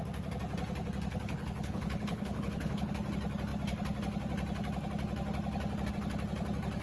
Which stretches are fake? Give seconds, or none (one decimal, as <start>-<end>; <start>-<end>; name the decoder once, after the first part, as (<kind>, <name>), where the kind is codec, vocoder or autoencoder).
1.1-2.9 (codec, HILCodec)